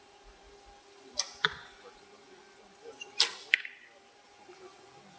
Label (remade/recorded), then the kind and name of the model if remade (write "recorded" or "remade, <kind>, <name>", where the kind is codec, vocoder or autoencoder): remade, vocoder, BigVGAN v2